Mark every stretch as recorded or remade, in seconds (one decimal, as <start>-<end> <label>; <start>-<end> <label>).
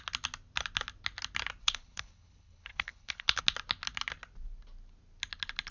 0.0-1.6 recorded; 1.6-3.4 remade; 3.4-5.7 recorded